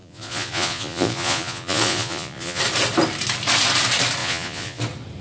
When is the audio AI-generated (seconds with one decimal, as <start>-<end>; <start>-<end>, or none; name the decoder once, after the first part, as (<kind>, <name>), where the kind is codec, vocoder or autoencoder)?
0.0-2.6 (vocoder, Vocos); 4.2-4.8

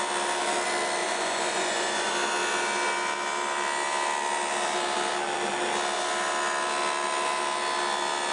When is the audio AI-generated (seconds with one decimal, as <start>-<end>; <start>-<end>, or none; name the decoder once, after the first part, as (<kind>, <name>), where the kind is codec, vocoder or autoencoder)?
1.0-2.1 (vocoder, Vocos)

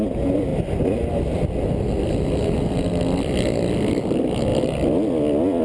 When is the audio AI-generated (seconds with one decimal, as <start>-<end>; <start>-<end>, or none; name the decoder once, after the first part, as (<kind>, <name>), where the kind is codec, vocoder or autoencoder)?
none

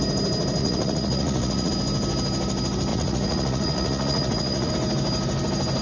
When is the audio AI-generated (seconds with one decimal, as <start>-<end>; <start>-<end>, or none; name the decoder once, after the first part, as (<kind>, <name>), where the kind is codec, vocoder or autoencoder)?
0.6-1.7 (vocoder, Vocos); 2.9-4.7